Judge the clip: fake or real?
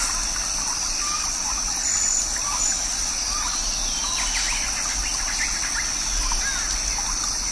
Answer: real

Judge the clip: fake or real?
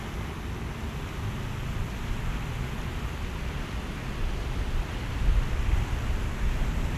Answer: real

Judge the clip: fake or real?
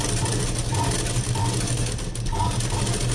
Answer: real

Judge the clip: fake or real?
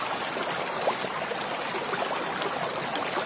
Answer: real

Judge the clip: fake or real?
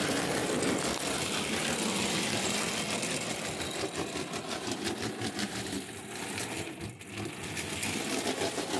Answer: real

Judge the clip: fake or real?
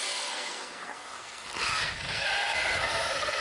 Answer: fake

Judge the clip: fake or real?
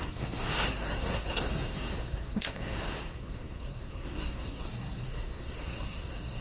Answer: fake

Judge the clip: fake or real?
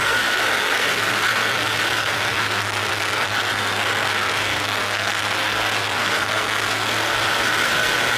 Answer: fake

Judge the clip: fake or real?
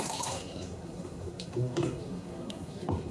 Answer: fake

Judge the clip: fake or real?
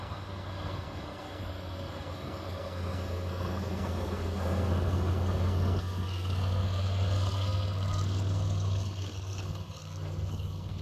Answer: fake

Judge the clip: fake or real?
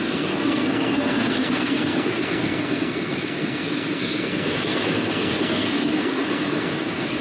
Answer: fake